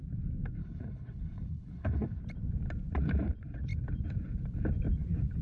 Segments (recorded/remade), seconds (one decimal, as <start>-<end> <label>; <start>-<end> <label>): 0.0-0.6 recorded; 0.6-2.2 remade; 2.2-5.4 recorded